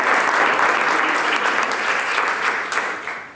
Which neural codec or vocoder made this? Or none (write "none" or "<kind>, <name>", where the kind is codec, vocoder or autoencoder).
none